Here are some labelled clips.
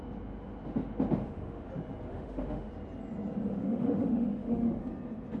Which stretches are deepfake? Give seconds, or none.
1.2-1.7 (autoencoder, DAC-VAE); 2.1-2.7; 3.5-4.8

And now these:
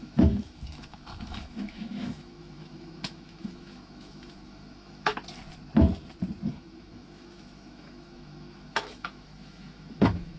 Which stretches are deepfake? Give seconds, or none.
0.0-5.1 (autoencoder, DAC-VAE); 6.5-10.4

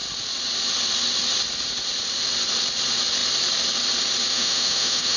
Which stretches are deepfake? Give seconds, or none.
4.3-5.2 (autoencoder, DAC-VAE)